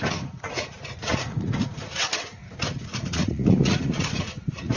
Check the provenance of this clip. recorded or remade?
remade